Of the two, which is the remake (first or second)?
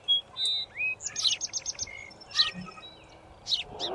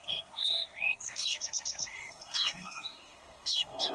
second